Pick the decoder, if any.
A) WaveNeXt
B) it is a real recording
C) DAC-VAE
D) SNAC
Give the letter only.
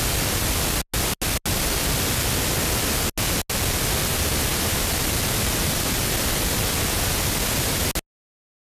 B